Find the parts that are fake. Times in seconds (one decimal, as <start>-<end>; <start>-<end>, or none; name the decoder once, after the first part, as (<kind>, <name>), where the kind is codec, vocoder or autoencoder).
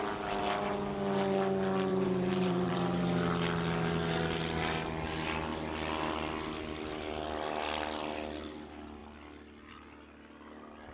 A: 1.9-3.0 (vocoder, BigVGAN v2)